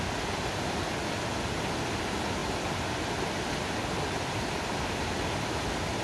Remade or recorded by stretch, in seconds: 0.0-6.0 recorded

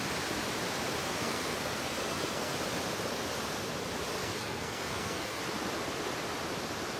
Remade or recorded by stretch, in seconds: 0.0-1.0 recorded; 1.0-2.5 remade; 2.5-4.2 recorded; 4.2-5.4 remade; 5.4-7.0 recorded